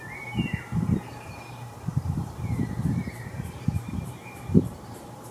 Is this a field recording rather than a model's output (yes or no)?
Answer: no